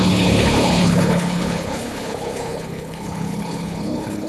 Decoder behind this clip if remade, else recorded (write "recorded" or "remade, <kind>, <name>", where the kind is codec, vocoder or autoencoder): remade, codec, HILCodec